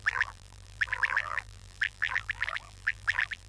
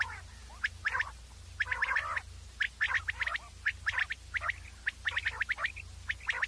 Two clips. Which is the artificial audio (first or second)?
first